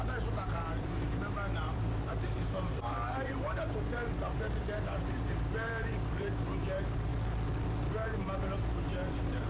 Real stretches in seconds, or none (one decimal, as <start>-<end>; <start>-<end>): 7.1-7.9